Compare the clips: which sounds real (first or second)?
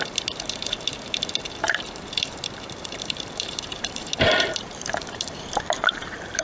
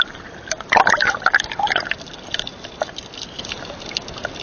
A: second